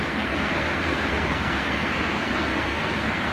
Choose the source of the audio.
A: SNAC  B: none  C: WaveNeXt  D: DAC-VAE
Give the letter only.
A